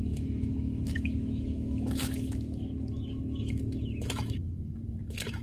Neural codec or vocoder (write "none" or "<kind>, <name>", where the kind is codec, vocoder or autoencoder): autoencoder, DAC-VAE